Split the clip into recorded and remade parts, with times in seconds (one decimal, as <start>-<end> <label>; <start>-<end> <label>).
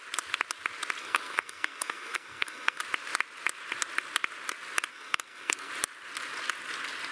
0.0-1.0 recorded; 1.0-2.8 remade; 2.8-4.9 recorded; 4.9-5.7 remade; 5.7-7.1 recorded